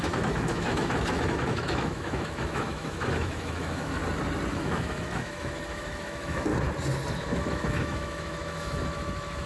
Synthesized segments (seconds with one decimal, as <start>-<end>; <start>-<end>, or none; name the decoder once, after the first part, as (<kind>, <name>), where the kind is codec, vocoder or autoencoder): 0.0-4.0 (autoencoder, DAC-VAE); 4.5-6.5; 7.1-9.5